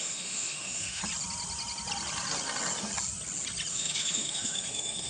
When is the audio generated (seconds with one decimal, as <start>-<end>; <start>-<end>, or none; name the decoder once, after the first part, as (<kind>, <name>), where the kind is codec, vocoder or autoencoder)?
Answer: 0.0-1.0 (autoencoder, DAC-VAE); 3.7-5.1